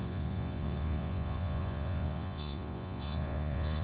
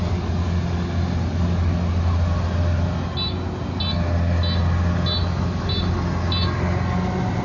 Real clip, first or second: second